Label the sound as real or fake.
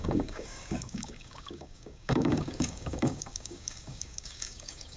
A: fake